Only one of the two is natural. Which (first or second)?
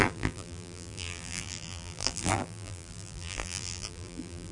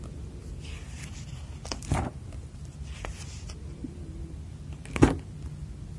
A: second